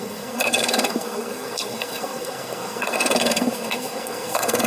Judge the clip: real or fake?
fake